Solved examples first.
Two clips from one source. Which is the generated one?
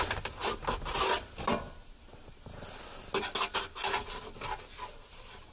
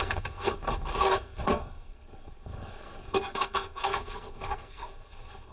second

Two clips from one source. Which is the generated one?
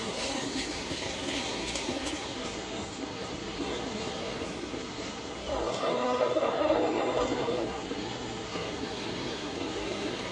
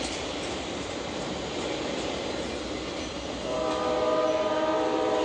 first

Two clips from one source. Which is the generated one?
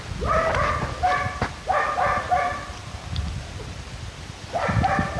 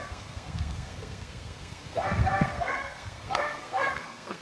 second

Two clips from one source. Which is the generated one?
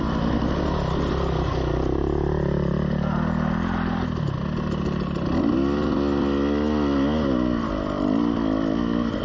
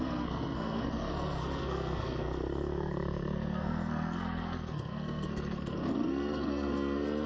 second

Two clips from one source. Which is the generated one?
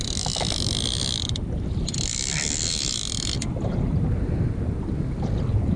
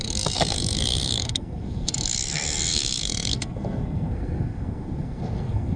second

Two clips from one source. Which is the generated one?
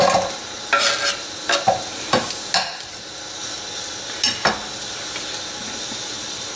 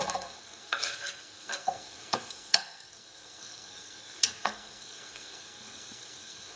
second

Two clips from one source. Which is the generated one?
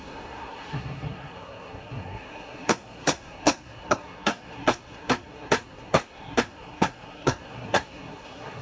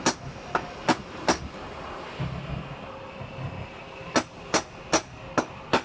first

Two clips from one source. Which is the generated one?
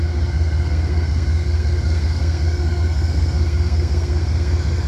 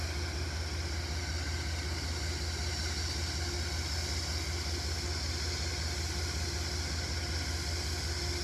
first